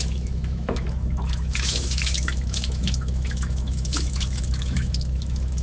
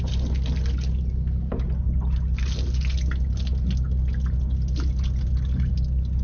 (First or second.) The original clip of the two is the second